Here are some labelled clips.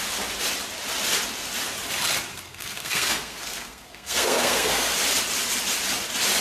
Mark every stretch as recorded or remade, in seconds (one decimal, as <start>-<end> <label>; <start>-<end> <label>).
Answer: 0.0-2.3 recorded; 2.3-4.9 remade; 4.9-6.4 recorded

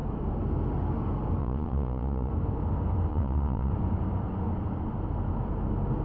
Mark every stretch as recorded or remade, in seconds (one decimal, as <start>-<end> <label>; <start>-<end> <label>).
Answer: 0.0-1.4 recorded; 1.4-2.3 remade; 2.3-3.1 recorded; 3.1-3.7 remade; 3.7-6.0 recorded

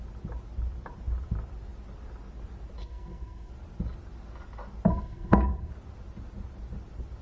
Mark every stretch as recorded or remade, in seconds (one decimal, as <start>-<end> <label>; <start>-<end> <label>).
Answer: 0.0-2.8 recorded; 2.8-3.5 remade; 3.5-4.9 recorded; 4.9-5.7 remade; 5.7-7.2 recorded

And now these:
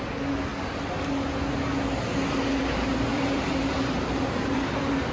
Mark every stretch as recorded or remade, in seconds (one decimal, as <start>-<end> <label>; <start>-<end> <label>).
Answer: 0.0-3.1 recorded; 3.1-5.1 remade

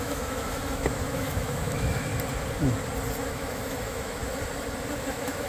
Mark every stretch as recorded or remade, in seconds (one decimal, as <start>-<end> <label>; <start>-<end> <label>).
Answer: 0.0-2.1 remade; 2.1-3.3 recorded; 3.3-4.2 remade; 4.2-5.1 recorded; 5.1-5.5 remade

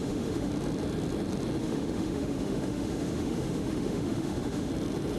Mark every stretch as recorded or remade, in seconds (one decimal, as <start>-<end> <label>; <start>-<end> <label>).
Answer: 0.0-0.5 remade; 0.5-1.6 recorded; 1.6-4.7 remade; 4.7-5.2 recorded